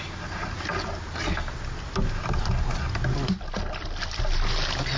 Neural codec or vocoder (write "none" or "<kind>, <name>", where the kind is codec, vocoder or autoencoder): none